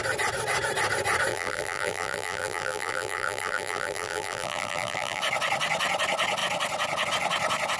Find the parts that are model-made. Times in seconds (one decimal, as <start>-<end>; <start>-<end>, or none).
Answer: 1.3-5.2